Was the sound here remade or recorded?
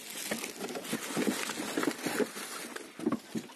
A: recorded